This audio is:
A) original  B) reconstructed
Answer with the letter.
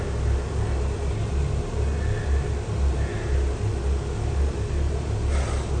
A